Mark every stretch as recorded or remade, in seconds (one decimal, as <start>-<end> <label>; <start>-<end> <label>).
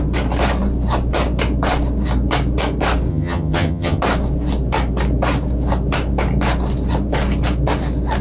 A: 0.0-3.1 recorded; 3.1-4.0 remade; 4.0-8.2 recorded